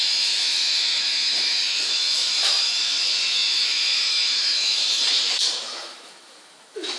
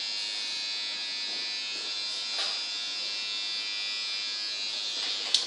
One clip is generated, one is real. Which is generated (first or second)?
first